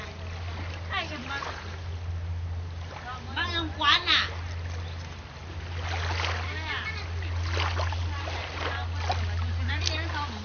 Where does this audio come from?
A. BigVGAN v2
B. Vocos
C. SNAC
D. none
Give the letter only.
D